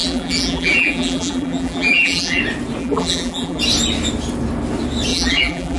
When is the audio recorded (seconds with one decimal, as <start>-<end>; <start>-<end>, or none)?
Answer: 2.4-2.8; 3.6-5.1